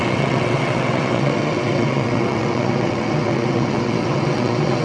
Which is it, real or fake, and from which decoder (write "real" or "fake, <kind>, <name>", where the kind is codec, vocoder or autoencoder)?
fake, vocoder, WaveNeXt